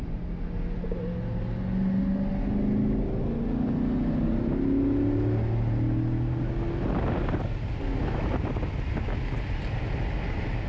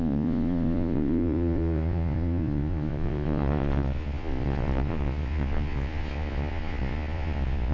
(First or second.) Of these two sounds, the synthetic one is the second